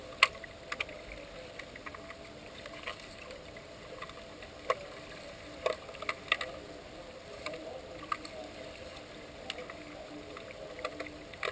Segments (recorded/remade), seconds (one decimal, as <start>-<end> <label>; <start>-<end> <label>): 0.0-11.5 recorded